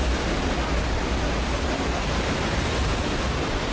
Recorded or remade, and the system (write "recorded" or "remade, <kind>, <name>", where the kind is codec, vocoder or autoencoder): recorded